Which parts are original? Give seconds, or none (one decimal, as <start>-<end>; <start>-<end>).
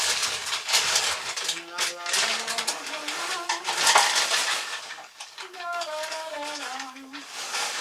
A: 3.0-4.5